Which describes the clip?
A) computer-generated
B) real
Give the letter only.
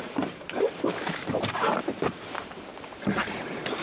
A